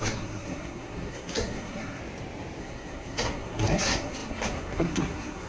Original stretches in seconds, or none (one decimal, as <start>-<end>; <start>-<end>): 2.0-2.6